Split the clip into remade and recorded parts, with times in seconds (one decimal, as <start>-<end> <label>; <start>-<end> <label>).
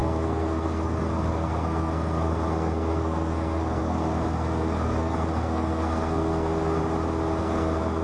0.0-6.8 remade; 6.8-7.4 recorded; 7.4-8.0 remade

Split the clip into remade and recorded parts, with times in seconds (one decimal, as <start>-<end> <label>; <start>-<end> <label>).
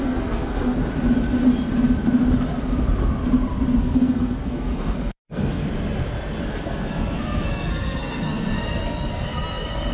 0.0-0.8 remade; 0.8-3.8 recorded; 3.8-5.6 remade; 5.6-6.4 recorded; 6.4-9.9 remade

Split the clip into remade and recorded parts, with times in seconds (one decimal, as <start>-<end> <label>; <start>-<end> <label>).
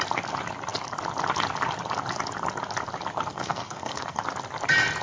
0.0-3.3 recorded; 3.3-4.2 remade; 4.2-5.0 recorded